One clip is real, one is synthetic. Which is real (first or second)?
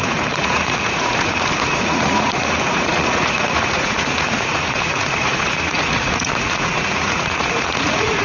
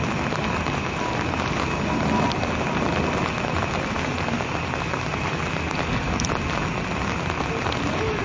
second